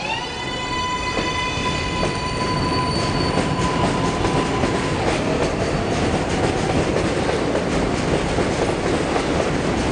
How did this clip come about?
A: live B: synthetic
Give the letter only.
A